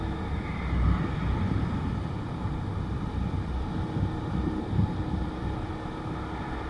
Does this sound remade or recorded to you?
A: recorded